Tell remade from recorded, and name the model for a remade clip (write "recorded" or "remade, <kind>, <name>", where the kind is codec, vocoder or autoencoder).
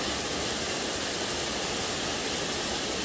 recorded